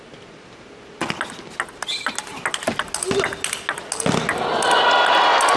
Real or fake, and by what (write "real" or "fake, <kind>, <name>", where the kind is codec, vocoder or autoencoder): real